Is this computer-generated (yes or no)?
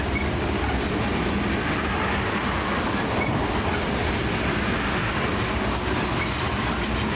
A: no